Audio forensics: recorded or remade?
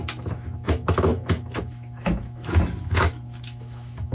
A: remade